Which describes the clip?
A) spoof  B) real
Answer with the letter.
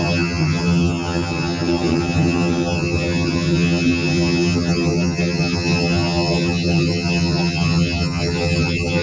A